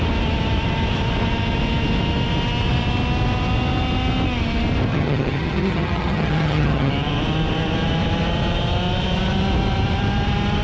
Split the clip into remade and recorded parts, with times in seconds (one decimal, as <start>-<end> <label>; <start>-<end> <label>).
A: 0.0-4.9 recorded; 4.9-6.9 remade; 6.9-10.6 recorded